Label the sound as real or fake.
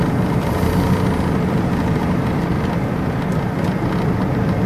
fake